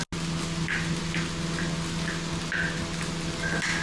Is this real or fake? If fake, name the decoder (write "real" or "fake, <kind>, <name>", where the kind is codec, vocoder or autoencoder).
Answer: real